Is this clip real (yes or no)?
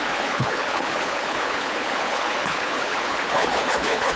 no